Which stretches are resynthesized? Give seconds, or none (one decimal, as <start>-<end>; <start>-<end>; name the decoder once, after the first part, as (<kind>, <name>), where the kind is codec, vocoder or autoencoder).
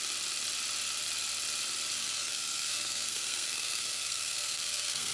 2.0-5.1 (codec, SNAC)